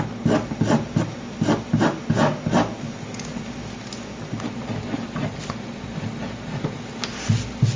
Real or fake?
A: real